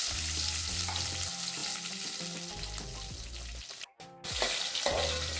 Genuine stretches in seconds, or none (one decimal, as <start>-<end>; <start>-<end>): 0.0-5.4